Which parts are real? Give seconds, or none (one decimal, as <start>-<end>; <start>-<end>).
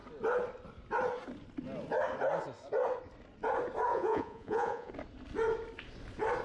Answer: 0.0-3.9; 4.9-6.4